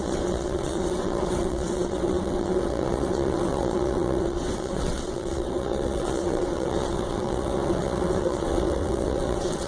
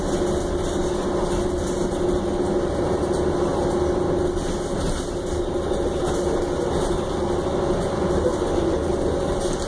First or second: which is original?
second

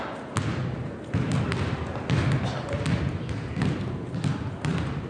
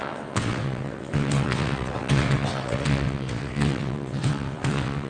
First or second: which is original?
first